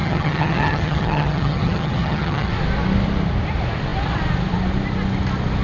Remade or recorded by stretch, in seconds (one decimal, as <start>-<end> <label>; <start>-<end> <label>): 0.0-2.5 remade; 2.5-5.6 recorded